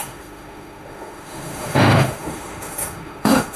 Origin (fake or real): fake